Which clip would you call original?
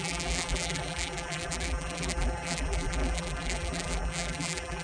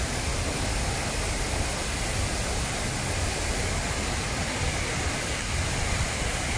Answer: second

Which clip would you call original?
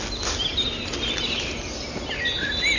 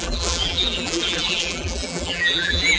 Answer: first